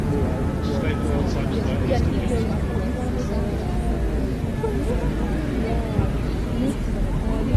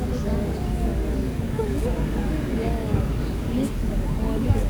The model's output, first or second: second